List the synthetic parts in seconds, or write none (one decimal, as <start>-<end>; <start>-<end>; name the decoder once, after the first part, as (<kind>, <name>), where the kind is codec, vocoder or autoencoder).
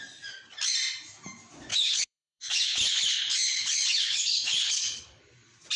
1.7-5.2 (codec, HILCodec)